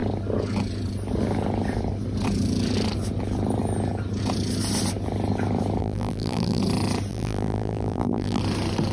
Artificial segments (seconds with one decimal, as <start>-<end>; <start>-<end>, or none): 5.8-6.6; 7.1-8.4